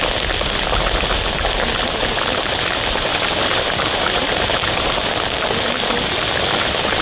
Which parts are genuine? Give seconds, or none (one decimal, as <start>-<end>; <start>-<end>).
0.0-3.1; 4.8-7.0